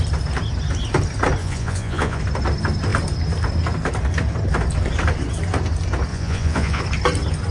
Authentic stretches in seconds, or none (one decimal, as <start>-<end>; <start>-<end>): 0.0-1.4; 2.2-6.1; 6.8-7.5